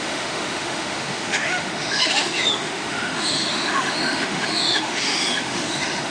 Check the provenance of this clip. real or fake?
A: fake